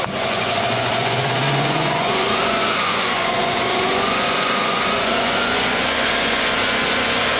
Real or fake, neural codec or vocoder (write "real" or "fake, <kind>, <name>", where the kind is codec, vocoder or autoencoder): fake, vocoder, Vocos